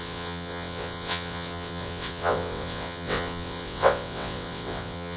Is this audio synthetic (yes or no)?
yes